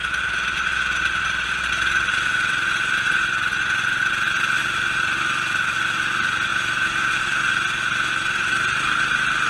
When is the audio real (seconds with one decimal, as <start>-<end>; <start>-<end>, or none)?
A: 0.0-6.5; 7.2-9.5